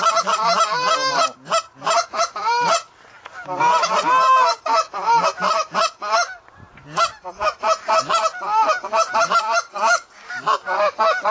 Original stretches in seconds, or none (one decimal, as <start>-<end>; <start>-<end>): 0.0-9.7; 10.3-11.3